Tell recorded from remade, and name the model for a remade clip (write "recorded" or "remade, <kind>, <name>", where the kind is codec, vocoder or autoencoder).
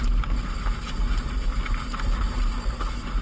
recorded